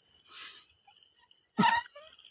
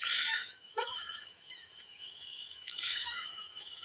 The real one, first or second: first